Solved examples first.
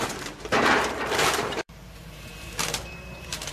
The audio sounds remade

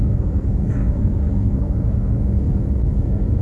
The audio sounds remade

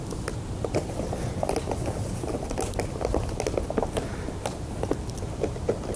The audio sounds recorded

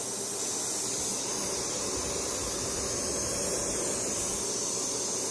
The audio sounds recorded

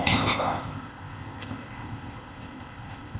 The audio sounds remade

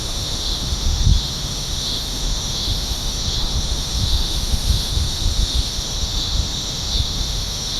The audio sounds remade